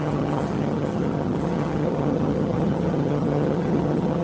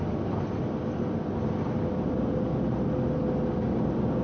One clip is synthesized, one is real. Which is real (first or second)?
second